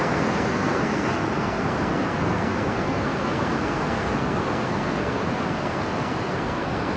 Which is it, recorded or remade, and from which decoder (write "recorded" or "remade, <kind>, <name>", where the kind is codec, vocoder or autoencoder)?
remade, codec, SNAC